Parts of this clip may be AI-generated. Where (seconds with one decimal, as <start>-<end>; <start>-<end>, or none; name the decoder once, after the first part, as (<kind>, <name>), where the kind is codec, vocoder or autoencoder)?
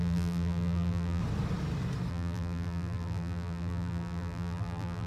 0.0-1.2 (vocoder, BigVGAN v2); 2.1-5.1